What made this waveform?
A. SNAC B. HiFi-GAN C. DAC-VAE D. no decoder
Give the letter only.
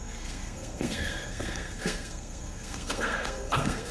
A